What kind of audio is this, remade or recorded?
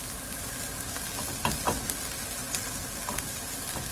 recorded